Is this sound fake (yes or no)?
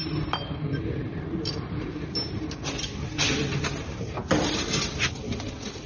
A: no